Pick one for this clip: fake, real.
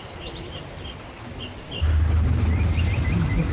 real